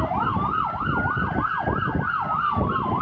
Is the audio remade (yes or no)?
no